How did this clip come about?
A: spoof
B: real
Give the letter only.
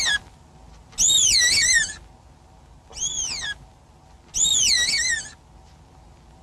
B